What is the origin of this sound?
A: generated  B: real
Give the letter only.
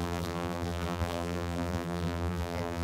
A